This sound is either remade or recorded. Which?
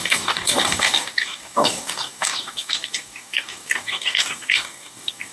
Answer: remade